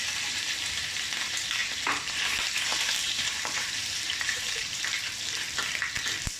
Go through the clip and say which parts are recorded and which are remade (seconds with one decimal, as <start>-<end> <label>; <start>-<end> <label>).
0.0-1.6 recorded; 1.6-2.3 remade; 2.3-2.7 recorded; 2.7-4.8 remade; 4.8-6.4 recorded